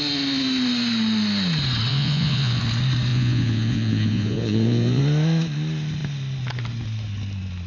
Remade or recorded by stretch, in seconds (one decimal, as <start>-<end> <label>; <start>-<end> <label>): 0.0-1.9 recorded; 1.9-2.6 remade; 2.6-3.1 recorded; 3.1-5.0 remade; 5.0-7.7 recorded